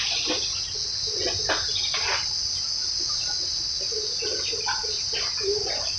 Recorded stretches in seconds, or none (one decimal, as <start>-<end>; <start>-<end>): 0.0-6.0